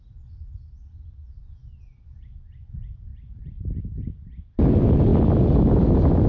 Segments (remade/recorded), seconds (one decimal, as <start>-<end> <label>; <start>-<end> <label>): 0.0-6.3 recorded